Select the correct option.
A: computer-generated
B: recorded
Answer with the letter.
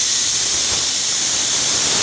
B